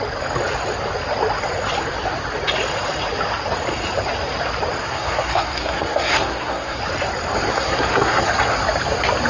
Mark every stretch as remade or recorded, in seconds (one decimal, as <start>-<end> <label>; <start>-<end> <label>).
0.0-4.8 recorded; 4.8-6.8 remade; 6.8-7.5 recorded; 7.5-8.3 remade; 8.3-9.3 recorded